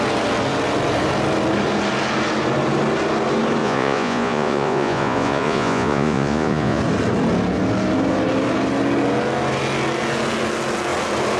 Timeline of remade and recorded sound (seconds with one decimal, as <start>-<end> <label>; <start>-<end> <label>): 0.0-3.6 recorded; 3.6-6.8 remade; 6.8-11.4 recorded